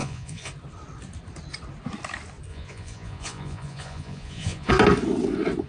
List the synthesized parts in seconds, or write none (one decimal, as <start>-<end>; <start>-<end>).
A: 0.0-0.5; 2.5-4.7